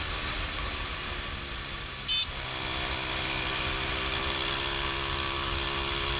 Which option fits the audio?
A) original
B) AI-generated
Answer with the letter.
A